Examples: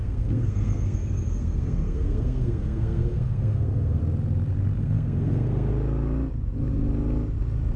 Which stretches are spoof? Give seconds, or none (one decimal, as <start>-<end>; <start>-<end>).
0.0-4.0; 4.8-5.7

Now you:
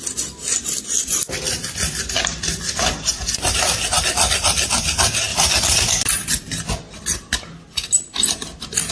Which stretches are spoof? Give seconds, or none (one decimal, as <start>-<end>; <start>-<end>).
none

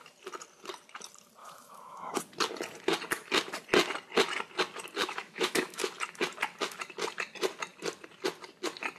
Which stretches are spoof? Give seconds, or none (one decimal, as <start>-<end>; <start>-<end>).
1.4-2.2; 5.0-5.8

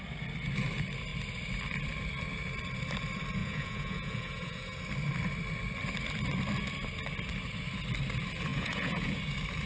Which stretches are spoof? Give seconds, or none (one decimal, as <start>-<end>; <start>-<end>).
3.4-4.8; 8.5-9.2

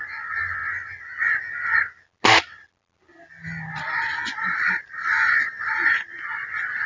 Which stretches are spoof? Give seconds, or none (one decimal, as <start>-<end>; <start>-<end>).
none